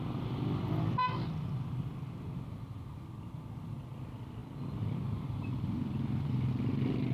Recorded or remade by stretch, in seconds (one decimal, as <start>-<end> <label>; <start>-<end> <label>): 0.0-7.1 recorded